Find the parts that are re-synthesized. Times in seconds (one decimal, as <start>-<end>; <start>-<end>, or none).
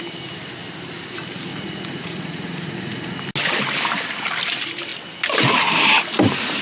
1.5-3.2